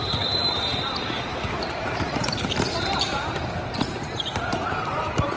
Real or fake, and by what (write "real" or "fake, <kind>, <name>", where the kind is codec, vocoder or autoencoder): fake, vocoder, BigVGAN v2